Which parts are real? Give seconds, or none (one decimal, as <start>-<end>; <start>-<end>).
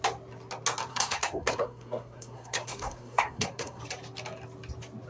0.0-0.9; 3.8-5.1